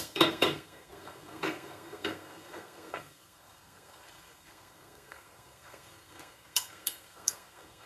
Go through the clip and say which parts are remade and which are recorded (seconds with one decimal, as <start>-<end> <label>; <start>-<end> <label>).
0.0-7.9 remade

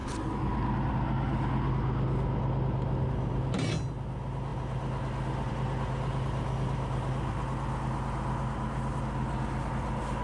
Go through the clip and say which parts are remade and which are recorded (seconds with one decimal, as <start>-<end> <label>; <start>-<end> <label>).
0.0-10.2 recorded

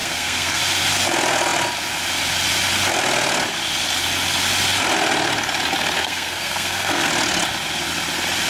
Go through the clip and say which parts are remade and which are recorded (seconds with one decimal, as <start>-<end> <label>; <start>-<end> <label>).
0.0-0.6 remade; 0.6-6.0 recorded; 6.0-7.1 remade; 7.1-8.5 recorded